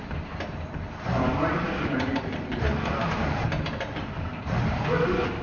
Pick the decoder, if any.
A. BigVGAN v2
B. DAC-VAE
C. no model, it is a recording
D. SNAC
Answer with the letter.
A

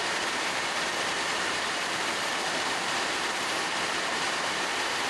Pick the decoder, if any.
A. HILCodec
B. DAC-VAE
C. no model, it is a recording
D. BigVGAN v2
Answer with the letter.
D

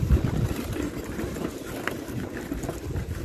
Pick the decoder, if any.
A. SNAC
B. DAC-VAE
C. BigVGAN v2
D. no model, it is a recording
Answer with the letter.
D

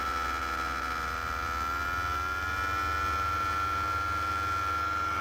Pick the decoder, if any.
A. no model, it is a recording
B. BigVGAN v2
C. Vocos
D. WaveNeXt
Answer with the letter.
A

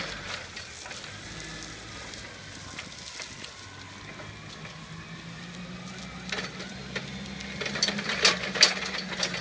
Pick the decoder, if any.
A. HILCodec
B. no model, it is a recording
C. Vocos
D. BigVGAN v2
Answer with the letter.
B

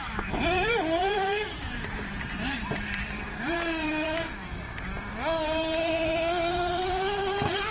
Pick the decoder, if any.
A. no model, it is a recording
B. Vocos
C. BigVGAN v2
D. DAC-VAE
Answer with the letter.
C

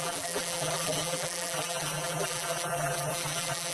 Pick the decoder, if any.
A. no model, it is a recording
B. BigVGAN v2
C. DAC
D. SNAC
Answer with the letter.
B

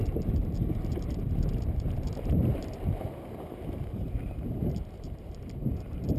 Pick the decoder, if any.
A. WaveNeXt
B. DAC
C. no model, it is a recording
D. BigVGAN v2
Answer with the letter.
D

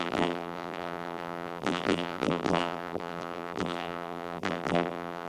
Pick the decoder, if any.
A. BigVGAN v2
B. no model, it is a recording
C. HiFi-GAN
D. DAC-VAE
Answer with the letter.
A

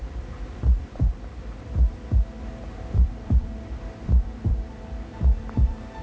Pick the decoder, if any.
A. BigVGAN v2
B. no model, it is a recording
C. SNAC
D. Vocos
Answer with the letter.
A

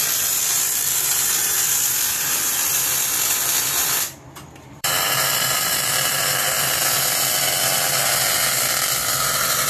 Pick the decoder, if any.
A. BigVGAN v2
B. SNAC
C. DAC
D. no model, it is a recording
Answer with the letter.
A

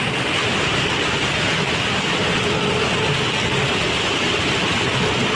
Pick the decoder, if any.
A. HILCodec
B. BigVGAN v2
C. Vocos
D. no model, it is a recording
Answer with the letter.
D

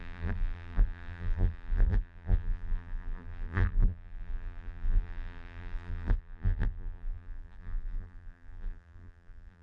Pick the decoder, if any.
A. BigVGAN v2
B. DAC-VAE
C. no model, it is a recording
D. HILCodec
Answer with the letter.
A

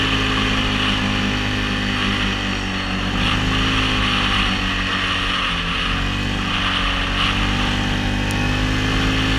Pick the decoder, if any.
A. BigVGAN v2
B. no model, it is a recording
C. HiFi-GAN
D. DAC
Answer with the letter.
B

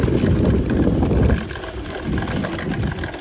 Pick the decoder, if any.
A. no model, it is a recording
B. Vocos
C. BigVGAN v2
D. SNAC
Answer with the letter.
A